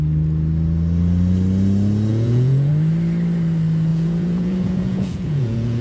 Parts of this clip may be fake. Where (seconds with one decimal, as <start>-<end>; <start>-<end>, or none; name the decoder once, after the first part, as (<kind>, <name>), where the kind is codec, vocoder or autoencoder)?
2.1-2.7 (vocoder, Vocos); 3.9-5.8